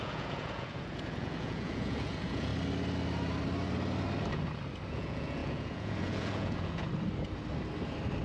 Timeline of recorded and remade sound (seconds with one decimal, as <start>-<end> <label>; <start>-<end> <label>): 0.0-2.5 remade; 2.5-4.9 recorded; 4.9-6.9 remade; 6.9-8.2 recorded